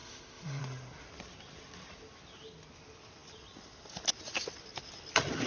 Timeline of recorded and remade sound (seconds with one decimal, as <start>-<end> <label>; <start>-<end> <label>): 0.0-0.6 remade; 0.6-5.5 recorded